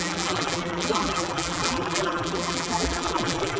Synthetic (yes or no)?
yes